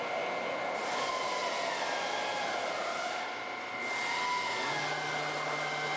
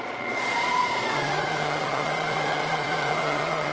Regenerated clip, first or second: second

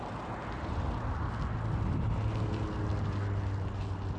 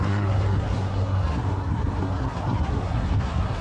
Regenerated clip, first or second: second